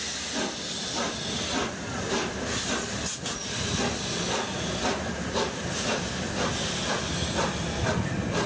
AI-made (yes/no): no